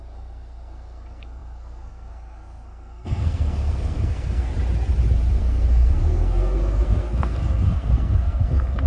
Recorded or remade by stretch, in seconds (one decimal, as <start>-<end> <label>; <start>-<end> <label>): 0.0-4.5 remade; 4.5-5.3 recorded; 5.3-8.9 remade